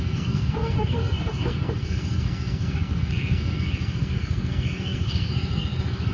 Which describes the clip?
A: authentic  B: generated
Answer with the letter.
B